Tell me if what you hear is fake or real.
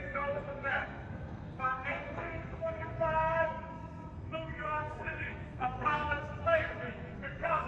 fake